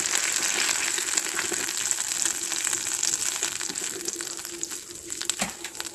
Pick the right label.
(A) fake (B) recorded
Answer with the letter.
B